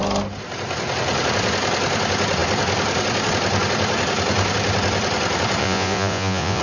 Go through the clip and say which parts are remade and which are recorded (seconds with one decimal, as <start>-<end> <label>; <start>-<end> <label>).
0.0-5.6 recorded; 5.6-6.6 remade